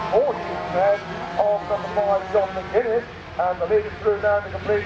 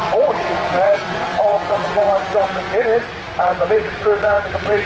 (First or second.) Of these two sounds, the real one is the first